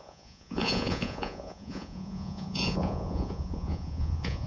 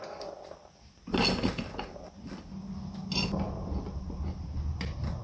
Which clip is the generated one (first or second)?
first